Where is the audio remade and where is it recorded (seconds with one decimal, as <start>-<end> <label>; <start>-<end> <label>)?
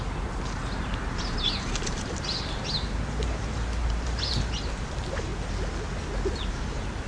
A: 0.0-5.3 remade; 5.3-6.5 recorded; 6.5-7.1 remade